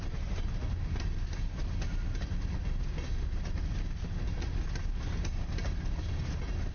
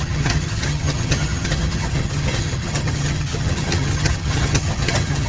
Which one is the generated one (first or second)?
second